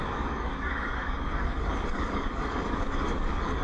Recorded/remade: remade